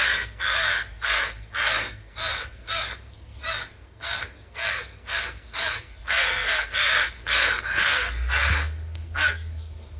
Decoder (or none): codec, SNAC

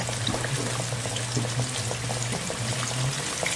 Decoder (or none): none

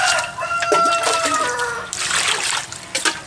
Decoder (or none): vocoder, BigVGAN v2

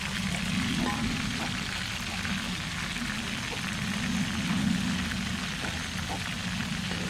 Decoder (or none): none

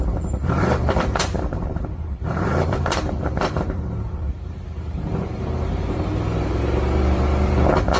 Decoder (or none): vocoder, BigVGAN v2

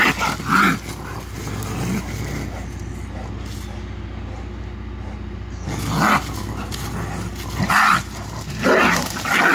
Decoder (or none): none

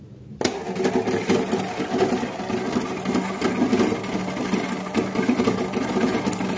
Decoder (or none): none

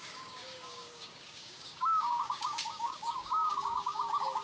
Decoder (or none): codec, DAC